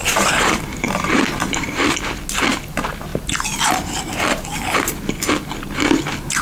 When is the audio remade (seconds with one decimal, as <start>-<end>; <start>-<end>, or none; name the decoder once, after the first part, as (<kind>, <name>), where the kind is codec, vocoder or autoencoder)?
0.0-2.0 (vocoder, BigVGAN v2)